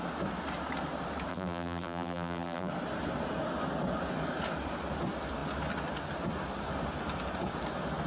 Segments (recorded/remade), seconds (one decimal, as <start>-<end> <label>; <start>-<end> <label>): 0.0-1.3 recorded; 1.3-2.7 remade; 2.7-8.1 recorded